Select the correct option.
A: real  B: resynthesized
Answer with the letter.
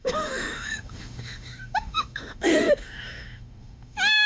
B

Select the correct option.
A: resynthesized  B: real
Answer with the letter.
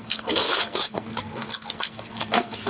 A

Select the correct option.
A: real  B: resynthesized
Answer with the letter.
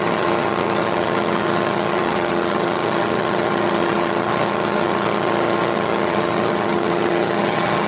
B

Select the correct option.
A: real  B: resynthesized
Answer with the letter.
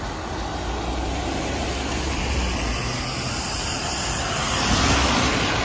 A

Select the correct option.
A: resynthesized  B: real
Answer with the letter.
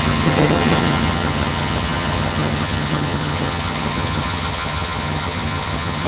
A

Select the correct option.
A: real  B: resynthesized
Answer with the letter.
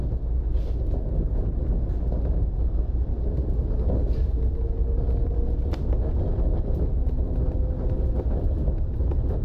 A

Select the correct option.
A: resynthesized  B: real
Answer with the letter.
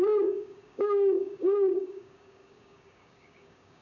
A